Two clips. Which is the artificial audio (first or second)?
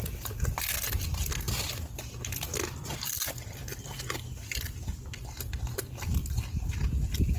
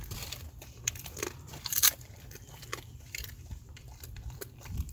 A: second